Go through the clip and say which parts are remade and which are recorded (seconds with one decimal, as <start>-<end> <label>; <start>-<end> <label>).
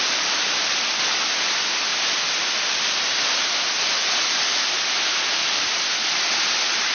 0.0-1.9 recorded; 1.9-3.9 remade; 3.9-6.9 recorded